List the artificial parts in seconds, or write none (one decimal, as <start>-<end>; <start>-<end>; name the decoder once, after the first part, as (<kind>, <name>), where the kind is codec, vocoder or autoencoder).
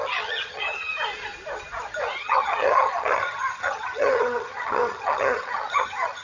0.0-0.9 (vocoder, HiFi-GAN); 2.2-6.2